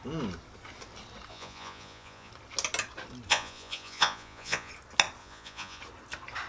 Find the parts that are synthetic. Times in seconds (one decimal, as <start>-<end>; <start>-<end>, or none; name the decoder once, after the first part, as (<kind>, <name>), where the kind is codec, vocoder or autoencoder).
1.3-2.3 (vocoder, Vocos); 3.3-4.7; 5.2-5.8